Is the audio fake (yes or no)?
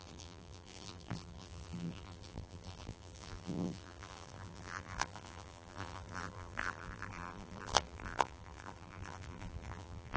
yes